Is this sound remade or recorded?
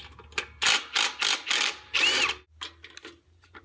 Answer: recorded